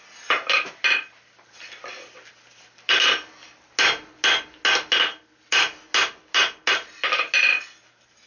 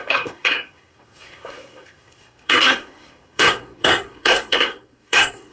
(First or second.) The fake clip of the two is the second